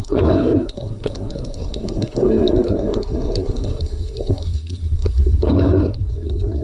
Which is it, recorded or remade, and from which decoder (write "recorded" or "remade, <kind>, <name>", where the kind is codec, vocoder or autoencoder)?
remade, codec, SNAC